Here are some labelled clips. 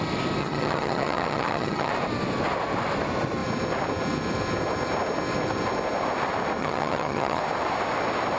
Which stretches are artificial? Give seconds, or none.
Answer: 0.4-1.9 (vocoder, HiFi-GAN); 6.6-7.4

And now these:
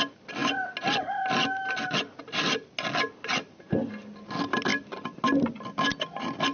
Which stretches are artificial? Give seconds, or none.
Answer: none

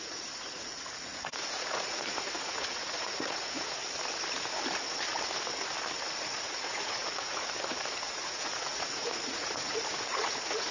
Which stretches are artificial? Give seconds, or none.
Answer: 0.0-3.8 (vocoder, Vocos); 6.2-10.7

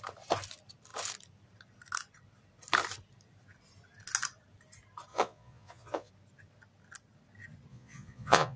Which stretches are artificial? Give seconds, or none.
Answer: 5.1-6.1 (vocoder, Vocos); 7.7-8.6

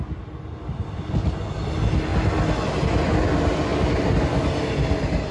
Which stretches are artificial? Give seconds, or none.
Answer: none